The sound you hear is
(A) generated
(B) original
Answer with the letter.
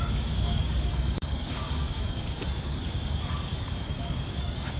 A